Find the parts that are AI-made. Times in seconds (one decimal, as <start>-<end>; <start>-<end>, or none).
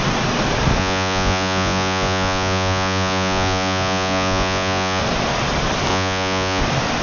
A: 0.8-5.0; 5.9-6.6